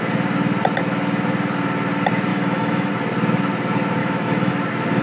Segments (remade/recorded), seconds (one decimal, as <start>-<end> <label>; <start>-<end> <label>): 0.0-2.3 recorded; 2.3-2.9 remade; 2.9-4.0 recorded; 4.0-4.5 remade; 4.5-5.0 recorded